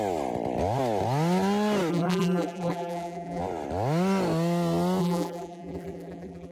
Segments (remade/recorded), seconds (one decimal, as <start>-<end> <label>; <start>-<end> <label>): 0.0-1.9 recorded; 1.9-3.4 remade; 3.4-5.0 recorded; 5.0-6.5 remade